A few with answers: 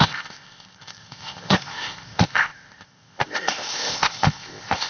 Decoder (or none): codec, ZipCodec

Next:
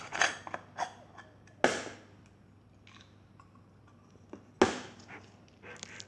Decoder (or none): none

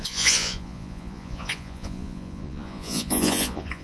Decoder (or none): vocoder, Vocos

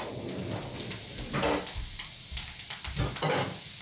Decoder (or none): none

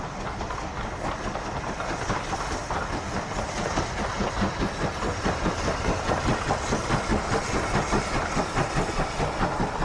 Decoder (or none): none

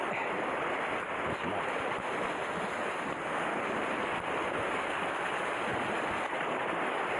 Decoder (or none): none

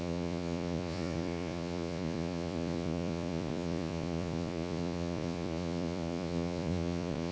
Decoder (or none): vocoder, Vocos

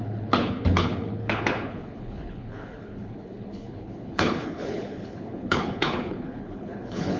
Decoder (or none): codec, HILCodec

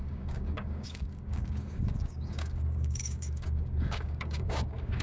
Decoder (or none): codec, DAC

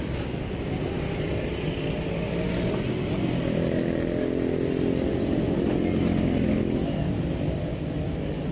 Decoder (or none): none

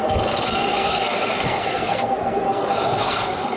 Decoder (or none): codec, SNAC